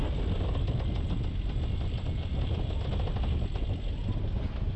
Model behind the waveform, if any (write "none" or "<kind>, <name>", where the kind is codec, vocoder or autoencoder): none